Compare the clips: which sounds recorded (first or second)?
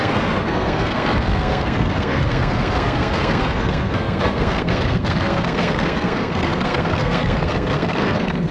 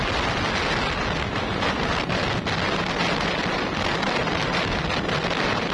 second